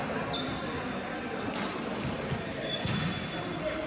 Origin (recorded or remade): recorded